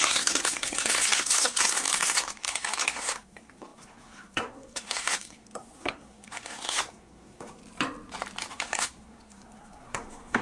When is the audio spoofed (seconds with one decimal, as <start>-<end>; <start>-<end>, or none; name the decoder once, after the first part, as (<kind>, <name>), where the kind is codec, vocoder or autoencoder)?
0.0-7.6 (codec, SNAC); 8.5-10.4